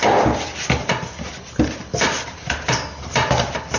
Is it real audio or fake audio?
real